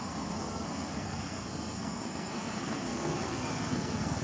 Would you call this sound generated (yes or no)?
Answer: yes